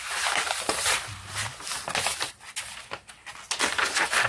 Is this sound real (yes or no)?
yes